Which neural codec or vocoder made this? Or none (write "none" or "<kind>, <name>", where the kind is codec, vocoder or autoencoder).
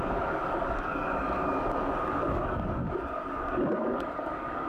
codec, DAC